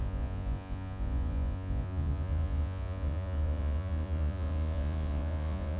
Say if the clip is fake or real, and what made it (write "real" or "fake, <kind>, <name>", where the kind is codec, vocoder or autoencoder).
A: fake, vocoder, Vocos